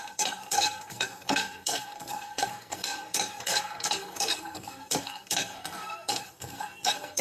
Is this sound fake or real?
fake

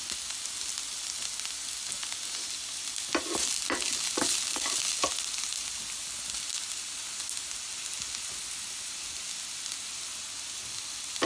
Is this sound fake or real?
real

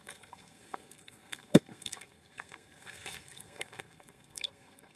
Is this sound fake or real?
fake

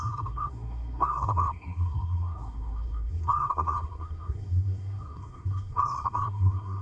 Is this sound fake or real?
fake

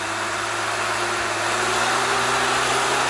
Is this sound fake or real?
real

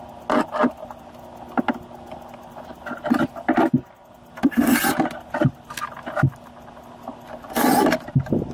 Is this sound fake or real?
real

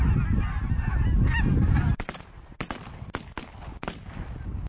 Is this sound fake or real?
real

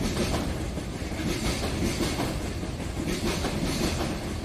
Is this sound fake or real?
real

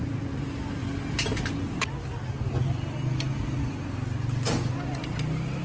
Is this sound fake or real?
real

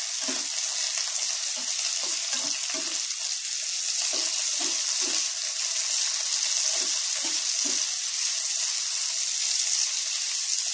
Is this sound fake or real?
real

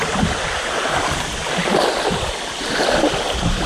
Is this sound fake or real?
real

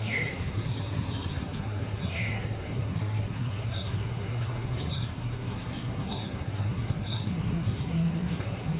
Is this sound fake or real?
fake